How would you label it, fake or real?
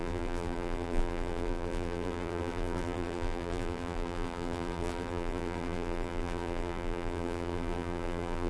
fake